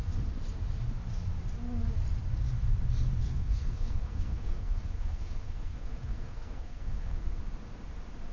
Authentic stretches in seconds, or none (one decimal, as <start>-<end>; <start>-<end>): 0.0-3.2; 7.4-8.3